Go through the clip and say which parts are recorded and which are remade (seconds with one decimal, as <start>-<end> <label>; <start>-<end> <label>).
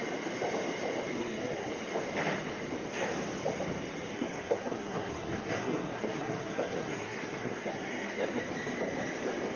0.0-1.2 recorded; 1.2-1.7 remade; 1.7-4.1 recorded; 4.1-8.4 remade; 8.4-9.6 recorded